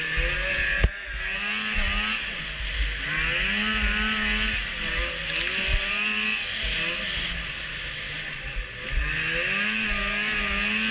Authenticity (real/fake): real